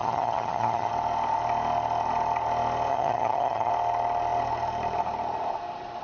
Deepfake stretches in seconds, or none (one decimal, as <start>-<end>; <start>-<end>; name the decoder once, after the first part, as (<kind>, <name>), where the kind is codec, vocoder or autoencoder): 0.0-0.9 (vocoder, HiFi-GAN); 2.9-3.7